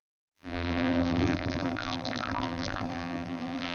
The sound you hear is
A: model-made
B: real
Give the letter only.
A